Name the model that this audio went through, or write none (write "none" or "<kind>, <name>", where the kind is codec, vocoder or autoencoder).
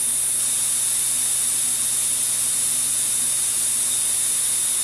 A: none